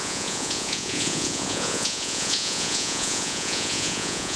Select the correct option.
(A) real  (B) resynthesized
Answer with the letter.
B